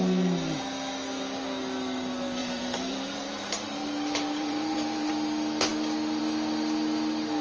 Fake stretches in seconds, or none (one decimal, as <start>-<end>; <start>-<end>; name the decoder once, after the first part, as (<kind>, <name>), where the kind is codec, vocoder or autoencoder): 2.4-5.1 (vocoder, BigVGAN v2)